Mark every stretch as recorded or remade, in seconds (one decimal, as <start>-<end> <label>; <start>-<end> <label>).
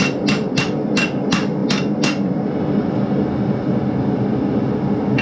0.0-5.2 recorded